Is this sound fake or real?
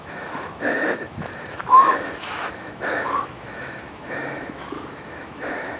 fake